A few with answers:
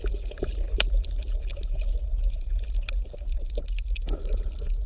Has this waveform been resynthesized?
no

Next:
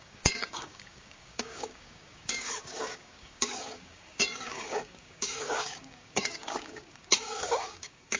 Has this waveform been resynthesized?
yes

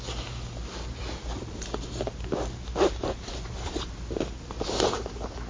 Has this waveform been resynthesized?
no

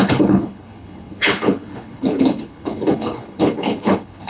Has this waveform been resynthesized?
yes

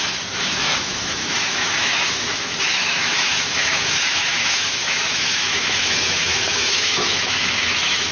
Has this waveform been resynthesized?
yes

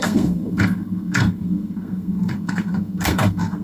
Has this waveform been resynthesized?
yes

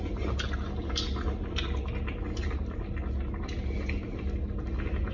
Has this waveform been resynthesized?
no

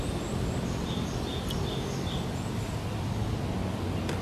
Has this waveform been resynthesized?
no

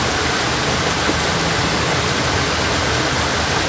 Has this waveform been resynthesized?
no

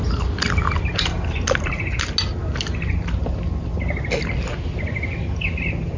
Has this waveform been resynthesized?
no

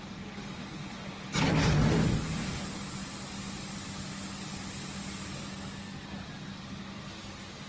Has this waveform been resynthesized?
no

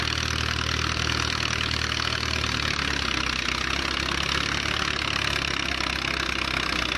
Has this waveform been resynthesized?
no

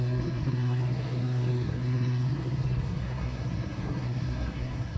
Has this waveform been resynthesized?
yes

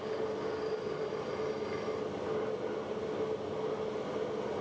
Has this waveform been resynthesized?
no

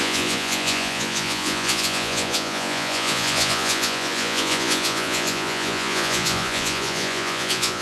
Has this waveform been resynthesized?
yes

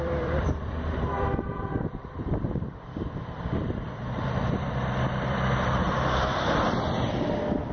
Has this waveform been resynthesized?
yes